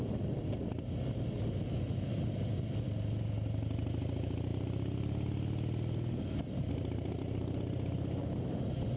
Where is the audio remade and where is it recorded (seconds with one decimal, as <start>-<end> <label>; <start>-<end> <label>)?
0.0-9.0 recorded